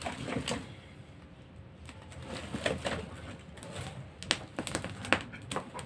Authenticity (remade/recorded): recorded